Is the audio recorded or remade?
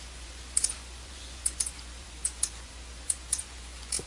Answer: remade